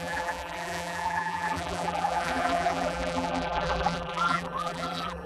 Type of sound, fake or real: fake